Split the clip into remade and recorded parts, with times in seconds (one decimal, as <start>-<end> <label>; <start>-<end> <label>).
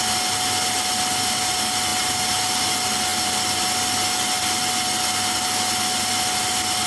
0.0-6.9 recorded